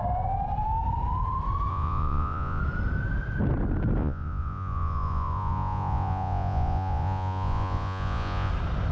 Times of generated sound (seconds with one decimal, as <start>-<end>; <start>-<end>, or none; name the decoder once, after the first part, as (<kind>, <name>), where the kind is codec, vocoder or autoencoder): 1.7-2.6 (vocoder, Vocos); 4.0-8.5